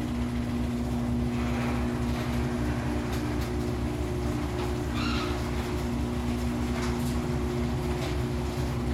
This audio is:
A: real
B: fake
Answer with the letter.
A